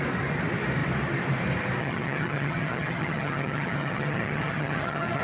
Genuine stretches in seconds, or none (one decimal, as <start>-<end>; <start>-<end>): 0.0-1.8